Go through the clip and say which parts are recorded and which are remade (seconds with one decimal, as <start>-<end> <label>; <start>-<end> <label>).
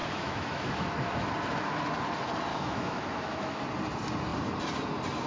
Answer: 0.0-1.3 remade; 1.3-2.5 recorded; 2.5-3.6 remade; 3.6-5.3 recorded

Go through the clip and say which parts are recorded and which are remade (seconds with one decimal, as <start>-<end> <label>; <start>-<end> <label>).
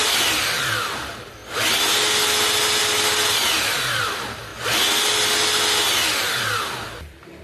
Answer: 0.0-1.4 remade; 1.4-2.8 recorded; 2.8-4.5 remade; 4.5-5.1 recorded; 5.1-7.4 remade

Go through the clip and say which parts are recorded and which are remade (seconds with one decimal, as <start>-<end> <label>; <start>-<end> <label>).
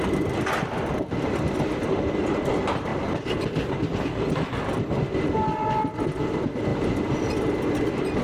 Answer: 0.0-8.2 recorded